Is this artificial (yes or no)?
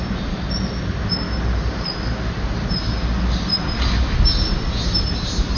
no